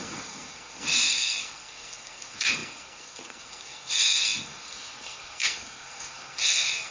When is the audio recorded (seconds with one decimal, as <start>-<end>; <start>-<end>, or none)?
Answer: none